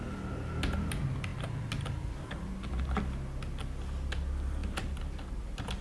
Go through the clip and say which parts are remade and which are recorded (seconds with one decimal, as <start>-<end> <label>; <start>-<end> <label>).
0.0-5.8 recorded